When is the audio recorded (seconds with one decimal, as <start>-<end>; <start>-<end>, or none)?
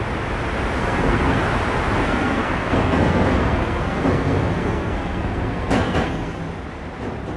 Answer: 0.0-0.8; 1.4-2.0; 6.4-7.4